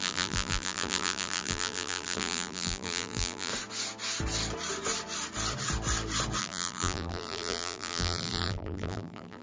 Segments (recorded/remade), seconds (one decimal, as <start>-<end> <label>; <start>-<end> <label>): 0.0-3.5 remade; 3.5-6.4 recorded; 6.4-9.4 remade